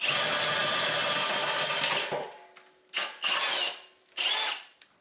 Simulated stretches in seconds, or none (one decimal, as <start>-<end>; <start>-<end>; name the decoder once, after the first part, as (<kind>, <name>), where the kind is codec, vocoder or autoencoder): none